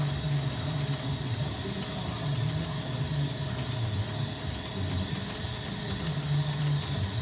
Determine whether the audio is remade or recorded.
recorded